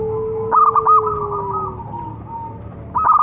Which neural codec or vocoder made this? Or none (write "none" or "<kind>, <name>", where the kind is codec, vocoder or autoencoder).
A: none